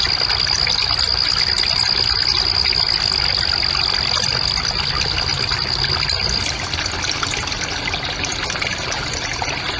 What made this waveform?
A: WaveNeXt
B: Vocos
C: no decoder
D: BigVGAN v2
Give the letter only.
C